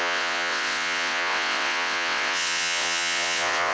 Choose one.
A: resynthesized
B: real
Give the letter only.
A